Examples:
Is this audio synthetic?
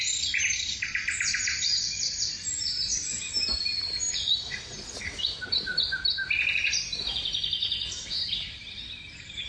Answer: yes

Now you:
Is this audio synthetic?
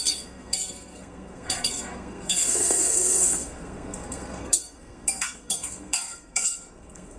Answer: yes